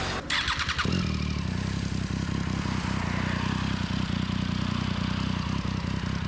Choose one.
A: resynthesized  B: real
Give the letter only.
B